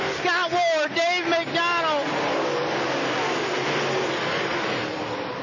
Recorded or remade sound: recorded